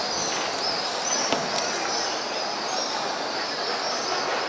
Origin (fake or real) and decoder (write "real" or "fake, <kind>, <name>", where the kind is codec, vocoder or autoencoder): real